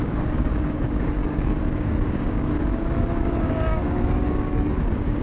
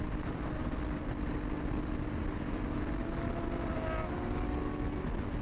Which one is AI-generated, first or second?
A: first